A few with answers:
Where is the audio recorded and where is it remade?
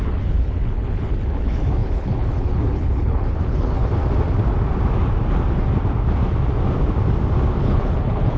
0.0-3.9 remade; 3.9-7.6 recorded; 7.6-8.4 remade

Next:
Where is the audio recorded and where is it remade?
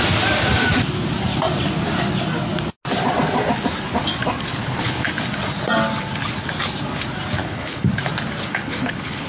0.0-4.6 recorded; 4.6-5.1 remade; 5.1-7.4 recorded; 7.4-8.0 remade; 8.0-8.5 recorded; 8.5-9.3 remade